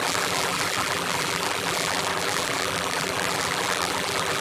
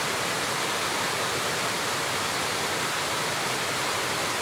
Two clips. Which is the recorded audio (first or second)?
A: second